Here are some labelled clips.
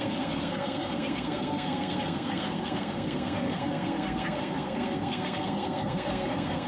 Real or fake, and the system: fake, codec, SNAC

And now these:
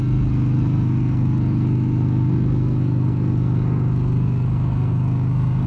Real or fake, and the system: fake, codec, SNAC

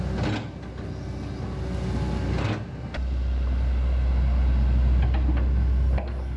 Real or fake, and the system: real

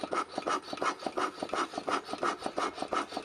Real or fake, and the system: real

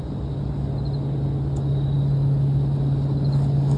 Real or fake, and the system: real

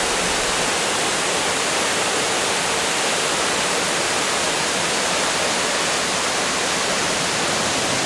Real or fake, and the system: real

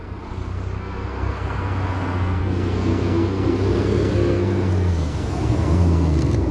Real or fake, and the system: fake, codec, SNAC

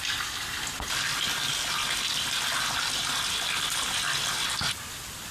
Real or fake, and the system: real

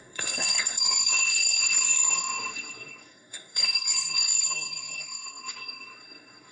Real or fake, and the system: fake, codec, SNAC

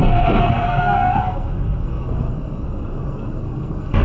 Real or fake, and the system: fake, codec, SNAC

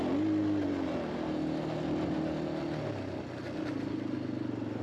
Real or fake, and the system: real